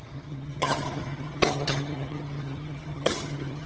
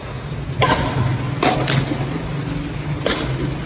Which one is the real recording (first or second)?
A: second